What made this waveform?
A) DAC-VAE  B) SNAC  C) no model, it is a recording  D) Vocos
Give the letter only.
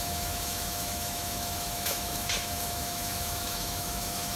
A